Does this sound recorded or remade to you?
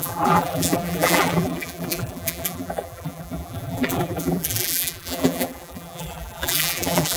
remade